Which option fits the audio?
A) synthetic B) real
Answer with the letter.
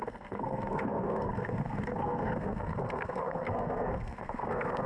A